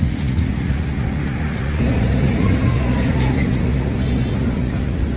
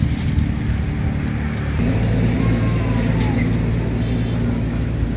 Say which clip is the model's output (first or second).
first